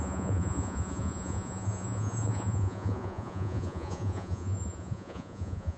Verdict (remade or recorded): remade